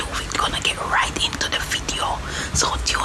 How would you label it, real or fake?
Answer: real